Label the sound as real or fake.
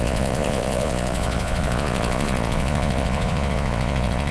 fake